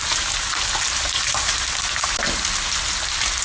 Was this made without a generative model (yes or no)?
yes